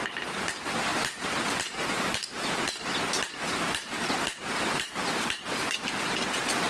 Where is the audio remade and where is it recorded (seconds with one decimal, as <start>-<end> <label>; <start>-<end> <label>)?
0.0-6.7 recorded